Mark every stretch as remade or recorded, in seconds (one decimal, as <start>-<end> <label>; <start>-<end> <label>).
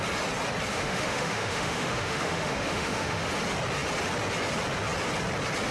0.0-0.7 recorded; 0.7-3.3 remade; 3.3-5.7 recorded